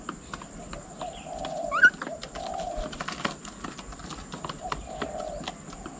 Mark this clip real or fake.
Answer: real